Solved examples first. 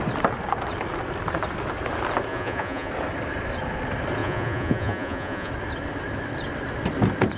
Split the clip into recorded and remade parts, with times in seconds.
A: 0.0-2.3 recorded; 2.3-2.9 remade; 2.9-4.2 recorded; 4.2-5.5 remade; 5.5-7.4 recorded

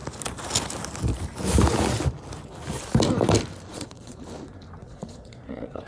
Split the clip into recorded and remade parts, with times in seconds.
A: 0.0-3.7 recorded; 3.7-4.2 remade; 4.2-4.8 recorded; 4.8-5.9 remade